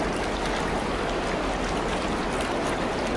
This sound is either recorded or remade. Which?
recorded